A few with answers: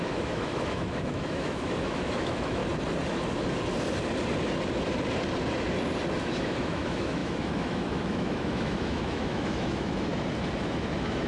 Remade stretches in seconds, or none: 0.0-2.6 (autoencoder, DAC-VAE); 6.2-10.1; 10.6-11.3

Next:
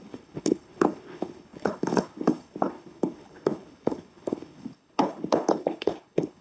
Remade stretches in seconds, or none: 0.0-6.4 (codec, HILCodec)